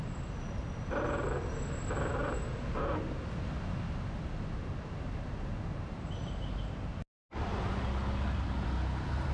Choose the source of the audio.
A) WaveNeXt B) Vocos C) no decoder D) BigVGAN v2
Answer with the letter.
C